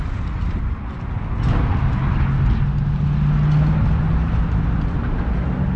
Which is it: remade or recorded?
recorded